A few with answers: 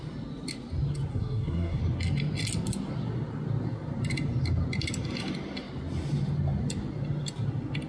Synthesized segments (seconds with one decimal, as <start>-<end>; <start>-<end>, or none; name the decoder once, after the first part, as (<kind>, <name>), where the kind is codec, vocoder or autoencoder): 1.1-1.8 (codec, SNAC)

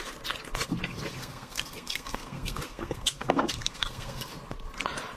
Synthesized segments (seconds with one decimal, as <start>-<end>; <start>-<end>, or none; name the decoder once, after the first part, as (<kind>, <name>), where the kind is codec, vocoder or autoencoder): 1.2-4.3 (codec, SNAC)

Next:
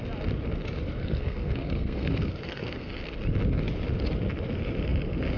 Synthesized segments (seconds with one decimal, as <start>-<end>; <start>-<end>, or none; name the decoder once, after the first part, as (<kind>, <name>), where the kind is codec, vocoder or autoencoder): 1.0-2.9 (codec, SNAC)